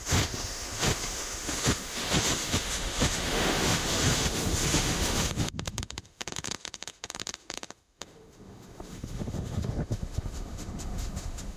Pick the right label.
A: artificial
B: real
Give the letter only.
A